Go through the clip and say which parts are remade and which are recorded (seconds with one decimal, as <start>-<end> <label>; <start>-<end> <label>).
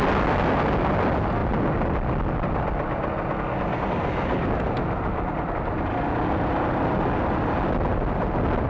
0.0-7.9 recorded; 7.9-8.7 remade